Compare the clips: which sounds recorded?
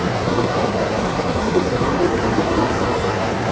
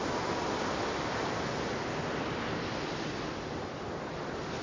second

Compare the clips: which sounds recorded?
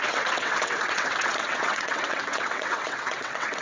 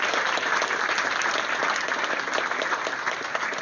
second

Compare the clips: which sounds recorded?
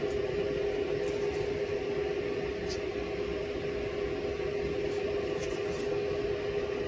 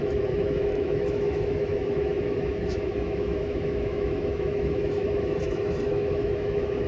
first